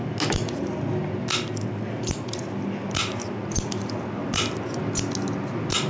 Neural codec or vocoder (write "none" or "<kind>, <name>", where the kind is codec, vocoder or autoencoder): none